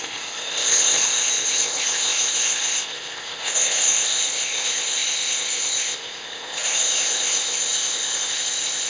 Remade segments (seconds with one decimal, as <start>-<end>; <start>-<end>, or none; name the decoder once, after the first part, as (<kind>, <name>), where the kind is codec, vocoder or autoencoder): 0.0-8.9 (codec, ZipCodec)